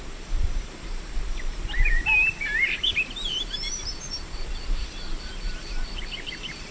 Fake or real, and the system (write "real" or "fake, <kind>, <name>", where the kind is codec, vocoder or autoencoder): fake, vocoder, BigVGAN v2